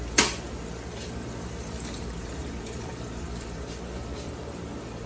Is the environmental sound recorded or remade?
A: remade